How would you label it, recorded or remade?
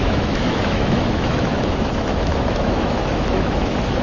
remade